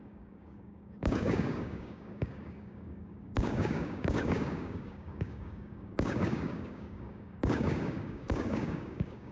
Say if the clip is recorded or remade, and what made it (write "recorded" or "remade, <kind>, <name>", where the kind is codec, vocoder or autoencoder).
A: remade, codec, DAC